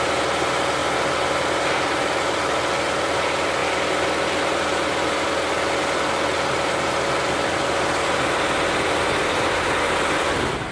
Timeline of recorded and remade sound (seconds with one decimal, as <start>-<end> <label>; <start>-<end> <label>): 0.0-0.8 recorded; 0.8-2.3 remade; 2.3-10.7 recorded